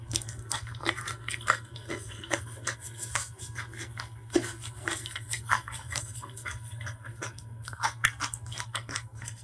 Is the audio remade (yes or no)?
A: yes